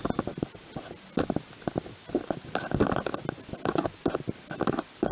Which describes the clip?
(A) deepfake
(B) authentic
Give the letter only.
B